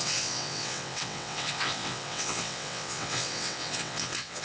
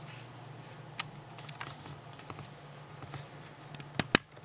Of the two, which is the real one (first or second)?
second